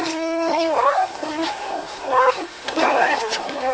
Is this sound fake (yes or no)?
yes